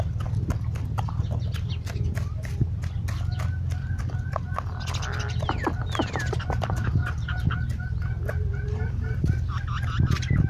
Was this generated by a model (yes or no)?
no